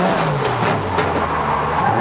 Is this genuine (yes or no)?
yes